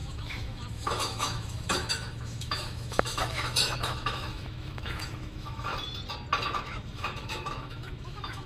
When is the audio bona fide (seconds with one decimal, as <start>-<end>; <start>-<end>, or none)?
5.7-6.6